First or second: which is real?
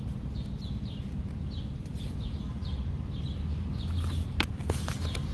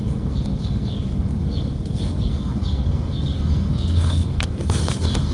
first